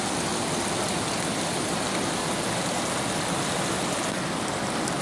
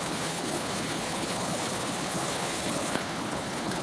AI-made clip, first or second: second